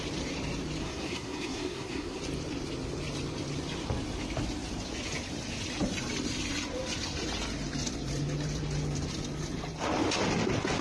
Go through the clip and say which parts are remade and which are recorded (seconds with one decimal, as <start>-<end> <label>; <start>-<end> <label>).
0.0-0.8 recorded; 0.8-2.2 remade; 2.2-10.8 recorded